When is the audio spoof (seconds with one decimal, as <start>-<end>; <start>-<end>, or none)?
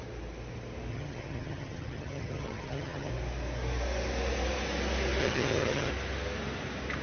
0.9-3.1; 5.2-5.9